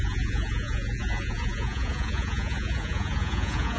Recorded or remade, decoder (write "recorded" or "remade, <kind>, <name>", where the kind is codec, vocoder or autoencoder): remade, vocoder, Vocos